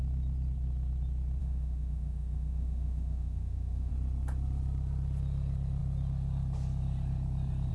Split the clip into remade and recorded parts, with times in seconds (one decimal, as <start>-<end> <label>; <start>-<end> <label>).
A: 0.0-1.4 recorded; 1.4-3.9 remade; 3.9-7.7 recorded